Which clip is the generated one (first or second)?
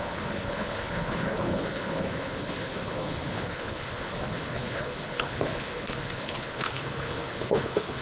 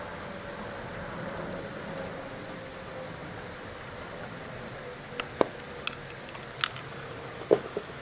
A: first